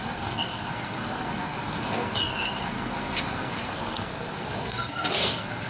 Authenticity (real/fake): fake